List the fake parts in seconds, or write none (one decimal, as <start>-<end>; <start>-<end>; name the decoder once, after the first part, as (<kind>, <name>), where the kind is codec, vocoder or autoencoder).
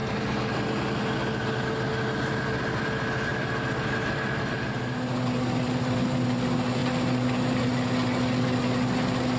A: none